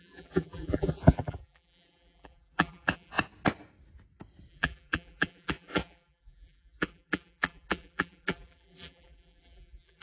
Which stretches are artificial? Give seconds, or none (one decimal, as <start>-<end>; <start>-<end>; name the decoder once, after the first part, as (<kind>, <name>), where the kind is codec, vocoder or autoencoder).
0.0-3.1 (vocoder, BigVGAN v2); 4.5-10.0